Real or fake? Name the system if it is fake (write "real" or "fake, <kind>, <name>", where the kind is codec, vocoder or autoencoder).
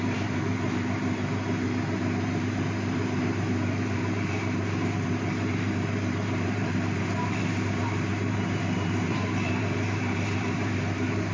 fake, vocoder, BigVGAN v2